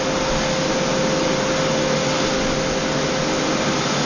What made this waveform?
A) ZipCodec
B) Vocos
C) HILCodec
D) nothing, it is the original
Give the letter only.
D